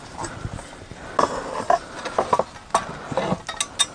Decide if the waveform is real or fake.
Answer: real